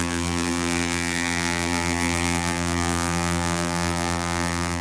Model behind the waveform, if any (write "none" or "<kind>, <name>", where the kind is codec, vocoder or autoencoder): vocoder, BigVGAN v2